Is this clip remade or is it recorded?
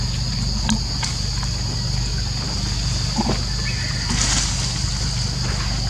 recorded